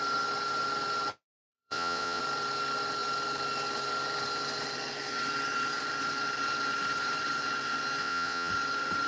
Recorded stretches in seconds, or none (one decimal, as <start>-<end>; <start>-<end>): 0.0-1.5; 2.2-8.0; 8.5-9.1